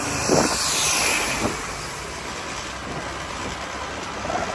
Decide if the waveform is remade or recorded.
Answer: recorded